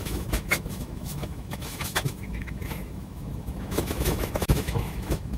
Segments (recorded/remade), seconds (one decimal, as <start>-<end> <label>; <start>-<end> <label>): 0.0-5.4 remade